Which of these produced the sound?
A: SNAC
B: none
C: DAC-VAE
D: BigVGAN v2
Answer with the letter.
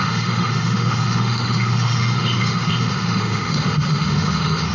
C